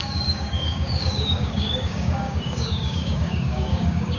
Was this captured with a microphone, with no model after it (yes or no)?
no